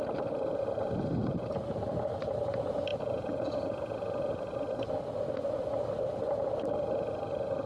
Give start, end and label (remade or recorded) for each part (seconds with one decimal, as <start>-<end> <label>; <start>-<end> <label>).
0.0-2.9 recorded; 2.9-4.3 remade; 4.3-7.7 recorded